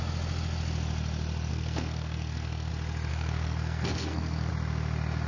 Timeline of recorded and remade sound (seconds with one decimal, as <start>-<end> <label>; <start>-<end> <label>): 0.0-1.5 recorded; 1.5-2.7 remade; 2.7-3.1 recorded; 3.1-4.5 remade; 4.5-5.3 recorded